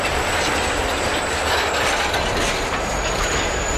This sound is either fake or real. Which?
real